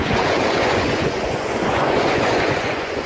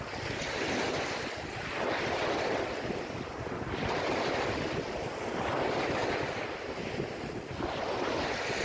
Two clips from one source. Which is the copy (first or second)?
first